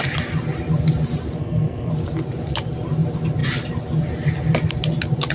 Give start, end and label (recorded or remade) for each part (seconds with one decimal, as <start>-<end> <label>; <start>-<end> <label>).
0.0-1.4 recorded; 1.4-1.9 remade; 1.9-5.3 recorded